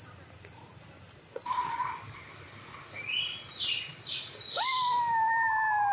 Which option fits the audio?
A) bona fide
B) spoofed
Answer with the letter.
B